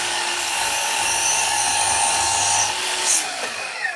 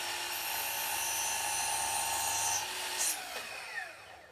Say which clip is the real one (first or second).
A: second